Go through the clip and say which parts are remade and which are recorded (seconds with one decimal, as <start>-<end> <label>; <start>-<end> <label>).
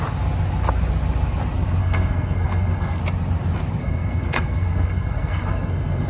0.0-1.8 recorded; 1.8-3.0 remade; 3.0-3.8 recorded; 3.8-6.1 remade